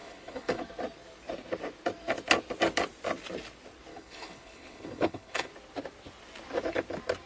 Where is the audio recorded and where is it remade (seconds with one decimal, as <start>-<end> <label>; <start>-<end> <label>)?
0.0-0.6 remade; 0.6-3.9 recorded; 3.9-5.5 remade; 5.5-7.3 recorded